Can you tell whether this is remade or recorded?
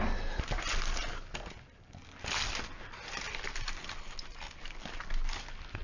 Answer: recorded